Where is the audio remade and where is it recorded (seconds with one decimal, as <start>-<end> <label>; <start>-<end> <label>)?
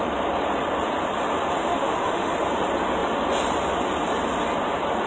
0.0-1.7 recorded; 1.7-2.3 remade; 2.3-5.1 recorded